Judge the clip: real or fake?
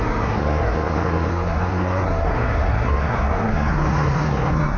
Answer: fake